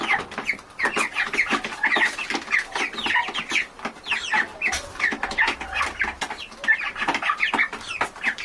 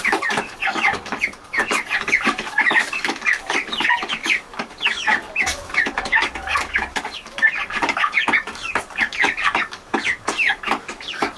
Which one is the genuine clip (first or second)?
first